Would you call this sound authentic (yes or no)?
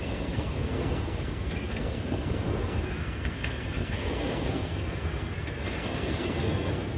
no